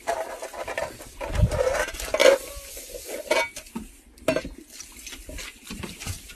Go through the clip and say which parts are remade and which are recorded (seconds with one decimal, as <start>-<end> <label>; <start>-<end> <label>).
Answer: 0.0-6.4 recorded